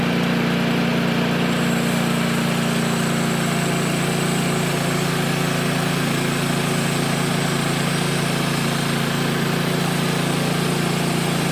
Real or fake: real